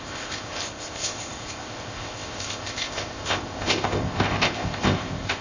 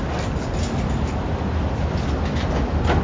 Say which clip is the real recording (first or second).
second